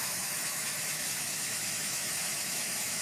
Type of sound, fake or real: fake